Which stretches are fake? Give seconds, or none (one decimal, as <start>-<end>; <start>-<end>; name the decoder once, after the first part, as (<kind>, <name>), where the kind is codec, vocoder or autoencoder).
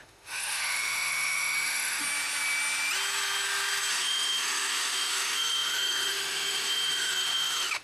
0.0-2.0 (autoencoder, DAC-VAE); 3.9-7.8